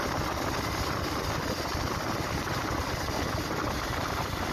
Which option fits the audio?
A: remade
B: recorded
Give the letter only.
B